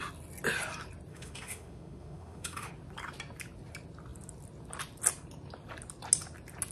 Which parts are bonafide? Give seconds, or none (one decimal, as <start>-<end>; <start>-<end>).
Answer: 0.0-1.1; 2.7-6.7

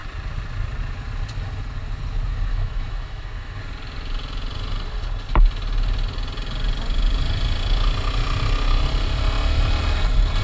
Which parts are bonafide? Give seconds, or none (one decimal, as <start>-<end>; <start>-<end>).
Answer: 0.0-2.5; 3.6-10.4

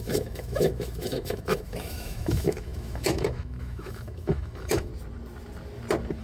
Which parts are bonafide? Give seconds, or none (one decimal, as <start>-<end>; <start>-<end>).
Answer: 4.9-6.2

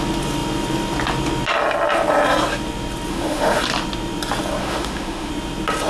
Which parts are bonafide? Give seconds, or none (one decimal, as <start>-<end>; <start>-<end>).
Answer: 0.0-3.1; 3.6-4.6; 5.3-5.9

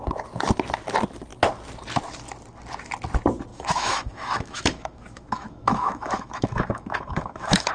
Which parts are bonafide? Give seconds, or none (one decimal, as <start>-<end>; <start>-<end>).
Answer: 0.0-3.5